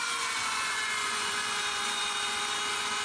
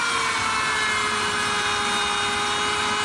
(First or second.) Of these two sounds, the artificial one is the first